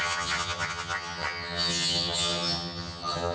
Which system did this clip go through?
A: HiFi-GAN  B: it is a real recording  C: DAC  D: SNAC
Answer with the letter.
A